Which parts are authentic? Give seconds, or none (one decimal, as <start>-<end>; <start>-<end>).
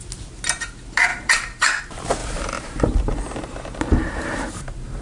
0.0-1.1; 1.8-2.2